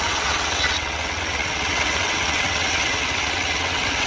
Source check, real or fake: fake